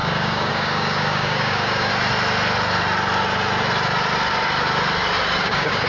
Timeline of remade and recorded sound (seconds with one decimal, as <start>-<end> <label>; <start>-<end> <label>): 0.0-1.9 remade; 1.9-5.4 recorded; 5.4-5.9 remade